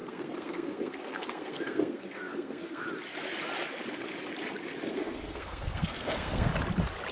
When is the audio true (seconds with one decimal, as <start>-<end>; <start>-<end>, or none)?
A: 2.9-4.9; 6.5-7.1